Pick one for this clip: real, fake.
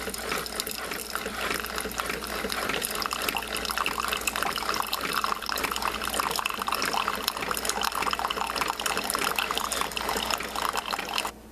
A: real